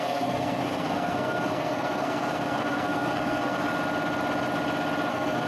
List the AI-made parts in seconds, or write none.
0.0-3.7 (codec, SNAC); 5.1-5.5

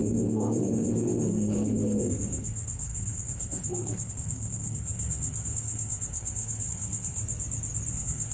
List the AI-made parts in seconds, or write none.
0.0-7.2 (codec, SNAC); 7.9-8.3

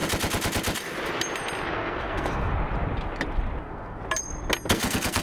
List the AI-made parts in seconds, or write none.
1.7-2.5 (codec, SNAC); 3.6-4.0; 4.7-5.2

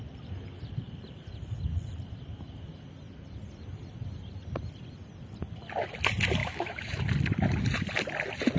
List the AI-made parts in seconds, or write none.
6.4-7.0 (autoencoder, DAC-VAE)

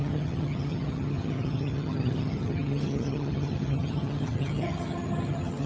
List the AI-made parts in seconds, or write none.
0.0-5.7 (vocoder, HiFi-GAN)

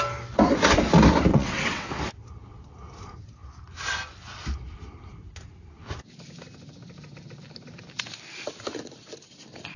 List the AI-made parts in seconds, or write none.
1.3-1.9 (vocoder, WaveNeXt)

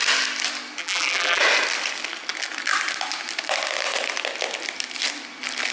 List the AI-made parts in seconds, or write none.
0.8-1.4 (vocoder, BigVGAN v2)

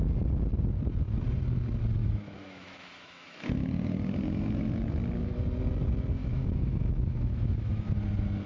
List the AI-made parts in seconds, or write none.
2.0-3.6 (autoencoder, DAC-VAE); 6.2-7.9